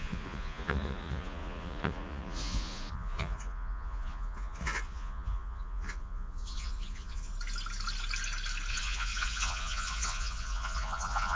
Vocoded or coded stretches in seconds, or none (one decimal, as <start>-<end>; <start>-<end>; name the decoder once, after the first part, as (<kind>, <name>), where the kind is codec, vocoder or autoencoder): 0.0-7.3 (vocoder, Vocos); 8.7-11.4